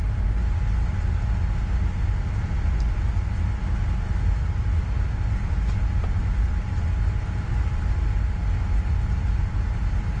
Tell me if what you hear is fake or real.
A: real